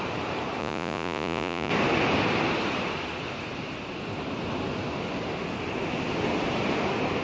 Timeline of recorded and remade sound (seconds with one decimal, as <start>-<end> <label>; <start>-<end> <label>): 0.0-0.6 recorded; 0.6-1.7 remade; 1.7-7.2 recorded